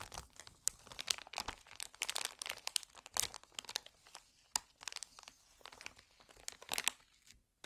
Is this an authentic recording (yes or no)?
yes